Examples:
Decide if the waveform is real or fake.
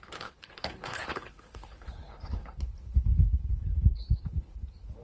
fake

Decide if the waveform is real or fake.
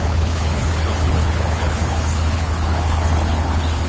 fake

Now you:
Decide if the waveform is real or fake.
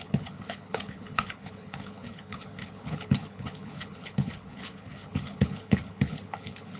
fake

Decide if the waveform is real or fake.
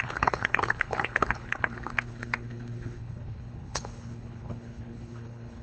fake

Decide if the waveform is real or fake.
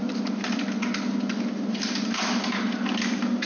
real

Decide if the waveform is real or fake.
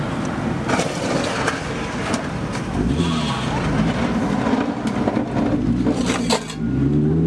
real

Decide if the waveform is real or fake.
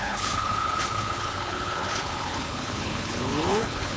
fake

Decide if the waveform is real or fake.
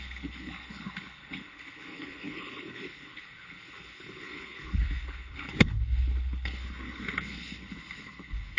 fake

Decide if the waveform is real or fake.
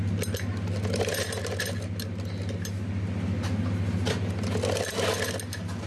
real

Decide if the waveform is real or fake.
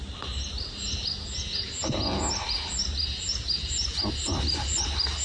real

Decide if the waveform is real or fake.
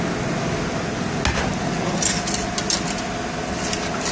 real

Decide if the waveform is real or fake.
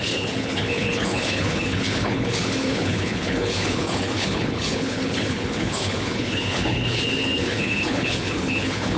fake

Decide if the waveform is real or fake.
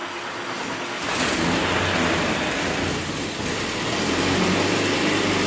real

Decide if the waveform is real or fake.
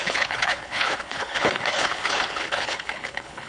fake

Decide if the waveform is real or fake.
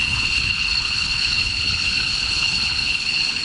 fake